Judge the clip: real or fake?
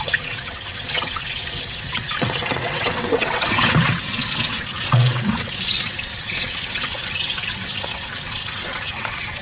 fake